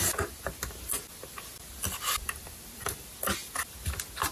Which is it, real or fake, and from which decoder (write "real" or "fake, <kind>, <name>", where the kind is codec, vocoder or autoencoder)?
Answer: real